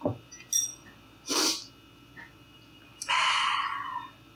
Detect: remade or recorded recorded